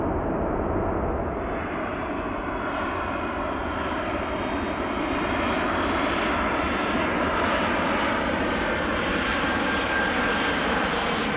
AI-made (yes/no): no